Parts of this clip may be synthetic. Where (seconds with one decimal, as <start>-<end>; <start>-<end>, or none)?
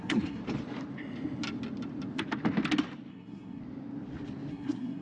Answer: 0.0-0.4; 3.1-3.6; 4.5-5.0